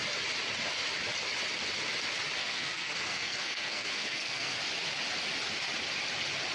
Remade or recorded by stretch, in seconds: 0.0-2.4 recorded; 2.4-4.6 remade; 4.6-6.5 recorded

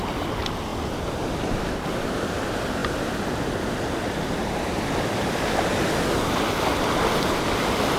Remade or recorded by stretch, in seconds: 0.0-8.0 recorded

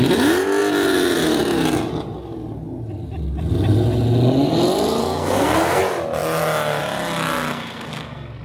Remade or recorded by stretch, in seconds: 0.0-5.0 recorded; 5.0-5.8 remade; 5.8-7.5 recorded; 7.5-8.4 remade

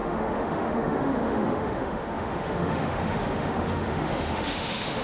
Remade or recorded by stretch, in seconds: 0.0-5.0 remade

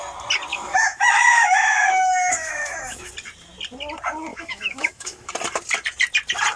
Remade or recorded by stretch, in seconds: 0.0-0.5 recorded; 0.5-3.1 remade; 3.1-4.3 recorded; 4.3-5.3 remade; 5.3-6.6 recorded

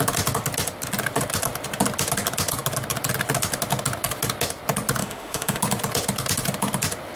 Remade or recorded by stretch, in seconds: 0.0-5.0 recorded; 5.0-5.6 remade; 5.6-7.2 recorded